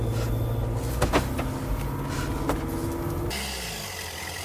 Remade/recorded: recorded